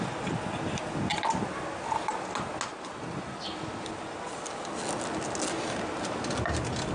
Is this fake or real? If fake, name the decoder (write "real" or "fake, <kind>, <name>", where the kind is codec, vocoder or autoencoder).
real